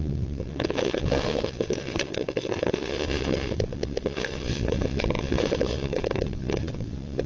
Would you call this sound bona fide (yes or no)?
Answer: no